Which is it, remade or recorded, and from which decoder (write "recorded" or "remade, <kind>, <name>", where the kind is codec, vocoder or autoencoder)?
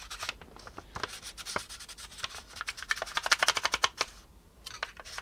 recorded